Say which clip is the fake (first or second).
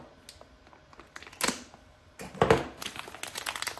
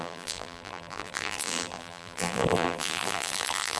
second